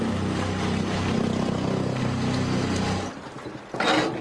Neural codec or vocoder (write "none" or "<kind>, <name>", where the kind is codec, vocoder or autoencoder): none